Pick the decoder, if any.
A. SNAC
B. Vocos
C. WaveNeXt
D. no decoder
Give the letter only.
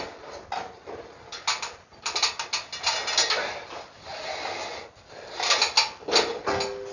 D